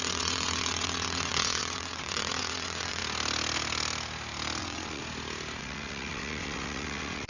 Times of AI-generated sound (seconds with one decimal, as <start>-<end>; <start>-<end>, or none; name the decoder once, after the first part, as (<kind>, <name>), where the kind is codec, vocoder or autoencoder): 0.0-3.0 (vocoder, WaveNeXt); 4.6-5.0; 5.6-7.3